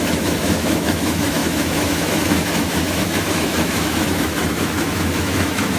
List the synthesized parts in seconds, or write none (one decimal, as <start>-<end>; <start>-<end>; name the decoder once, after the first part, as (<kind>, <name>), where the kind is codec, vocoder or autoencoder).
0.0-5.8 (autoencoder, DAC-VAE)

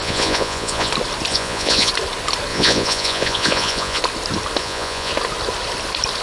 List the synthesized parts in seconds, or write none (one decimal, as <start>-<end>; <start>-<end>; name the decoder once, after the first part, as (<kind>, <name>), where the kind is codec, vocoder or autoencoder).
0.0-0.9 (vocoder, Vocos); 1.3-1.9; 2.5-4.0; 4.6-5.1

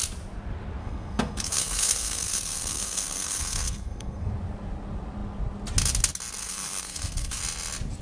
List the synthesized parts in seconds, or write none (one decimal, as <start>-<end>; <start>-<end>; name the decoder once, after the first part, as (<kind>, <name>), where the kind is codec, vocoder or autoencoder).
0.8-4.3 (codec, SNAC); 6.4-7.4

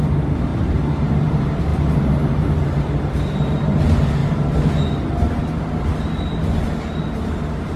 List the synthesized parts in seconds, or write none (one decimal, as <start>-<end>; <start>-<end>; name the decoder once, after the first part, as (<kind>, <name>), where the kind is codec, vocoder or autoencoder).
0.5-1.2 (vocoder, BigVGAN v2)

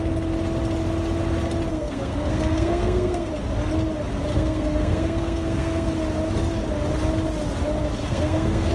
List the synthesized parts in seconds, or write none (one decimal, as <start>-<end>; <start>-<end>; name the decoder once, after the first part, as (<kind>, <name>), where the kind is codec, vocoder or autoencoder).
1.7-3.3 (codec, SNAC); 4.3-5.9; 8.0-8.7

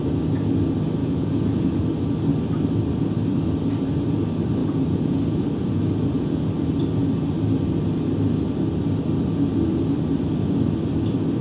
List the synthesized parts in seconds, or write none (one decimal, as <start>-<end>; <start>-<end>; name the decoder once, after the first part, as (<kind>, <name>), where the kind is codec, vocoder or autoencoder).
1.0-1.8 (vocoder, Vocos); 4.6-6.5

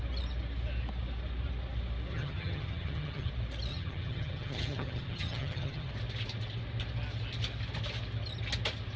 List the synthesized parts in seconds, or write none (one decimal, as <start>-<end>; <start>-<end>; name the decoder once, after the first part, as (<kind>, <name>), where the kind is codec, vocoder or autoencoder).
2.1-3.3 (vocoder, HiFi-GAN); 3.7-5.9